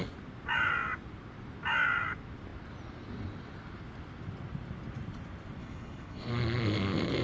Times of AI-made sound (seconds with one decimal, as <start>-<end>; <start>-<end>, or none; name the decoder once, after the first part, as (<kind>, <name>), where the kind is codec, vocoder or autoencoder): 5.6-6.3 (codec, HILCodec)